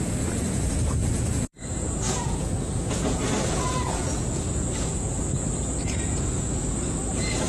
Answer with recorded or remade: remade